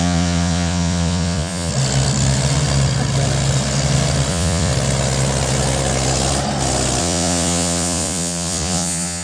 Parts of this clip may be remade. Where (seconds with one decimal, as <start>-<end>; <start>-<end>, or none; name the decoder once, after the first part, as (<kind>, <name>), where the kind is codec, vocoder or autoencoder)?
0.0-1.7 (vocoder, Vocos); 4.3-4.7; 7.0-9.2